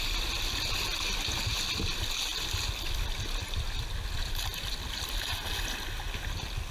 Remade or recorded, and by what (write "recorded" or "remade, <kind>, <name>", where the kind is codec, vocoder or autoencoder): recorded